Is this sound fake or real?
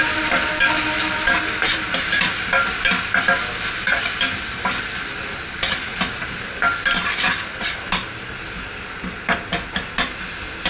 real